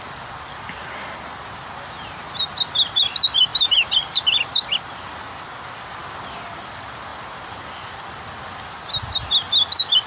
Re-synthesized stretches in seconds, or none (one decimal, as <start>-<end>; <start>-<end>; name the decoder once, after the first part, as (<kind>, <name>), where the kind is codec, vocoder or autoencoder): 3.5-4.8 (vocoder, BigVGAN v2); 7.1-8.4